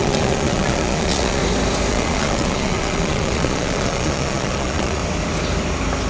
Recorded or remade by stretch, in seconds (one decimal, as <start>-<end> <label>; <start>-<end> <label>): 0.0-1.4 remade; 1.4-1.9 recorded; 1.9-5.0 remade; 5.0-6.1 recorded